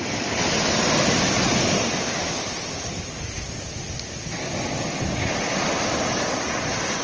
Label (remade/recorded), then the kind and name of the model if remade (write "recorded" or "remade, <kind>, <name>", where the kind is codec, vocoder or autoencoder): recorded